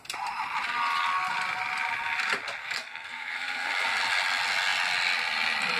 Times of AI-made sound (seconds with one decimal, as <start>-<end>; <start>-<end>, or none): 2.6-3.7